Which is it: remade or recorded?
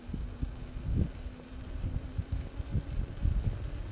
recorded